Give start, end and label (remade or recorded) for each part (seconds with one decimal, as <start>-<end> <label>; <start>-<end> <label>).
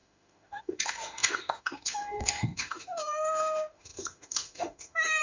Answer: 0.0-5.2 remade